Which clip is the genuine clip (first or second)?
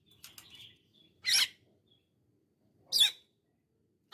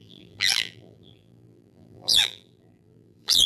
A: first